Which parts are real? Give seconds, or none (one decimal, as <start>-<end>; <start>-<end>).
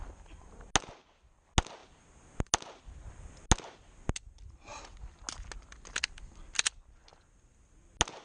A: 0.0-8.2